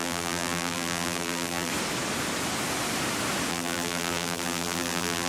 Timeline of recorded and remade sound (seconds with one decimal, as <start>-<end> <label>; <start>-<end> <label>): 0.0-1.7 remade; 1.7-3.5 recorded; 3.5-5.3 remade